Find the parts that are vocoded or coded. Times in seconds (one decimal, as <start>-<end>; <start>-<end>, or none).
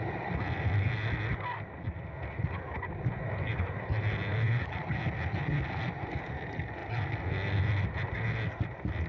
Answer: none